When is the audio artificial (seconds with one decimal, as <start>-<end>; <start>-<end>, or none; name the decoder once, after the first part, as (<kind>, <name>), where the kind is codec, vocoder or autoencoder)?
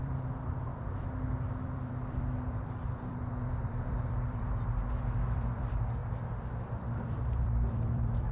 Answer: 0.0-0.7 (vocoder, BigVGAN v2); 1.5-8.3